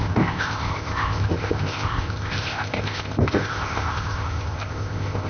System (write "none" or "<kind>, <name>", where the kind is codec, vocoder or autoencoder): codec, ZipCodec